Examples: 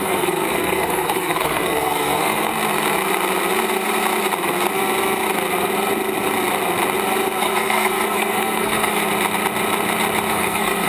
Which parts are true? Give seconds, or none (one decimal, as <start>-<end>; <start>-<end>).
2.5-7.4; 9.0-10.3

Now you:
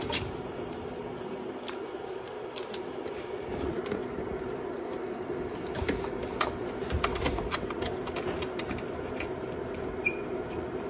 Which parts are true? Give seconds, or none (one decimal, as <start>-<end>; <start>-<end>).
none

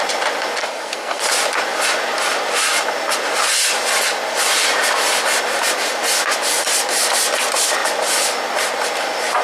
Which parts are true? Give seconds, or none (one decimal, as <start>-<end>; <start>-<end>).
0.0-0.6; 1.2-9.4

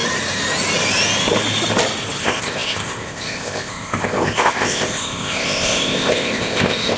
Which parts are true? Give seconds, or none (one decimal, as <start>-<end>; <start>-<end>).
0.0-2.2

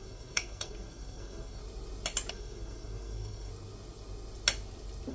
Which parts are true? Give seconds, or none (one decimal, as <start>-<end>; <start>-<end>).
1.6-2.3; 3.5-5.1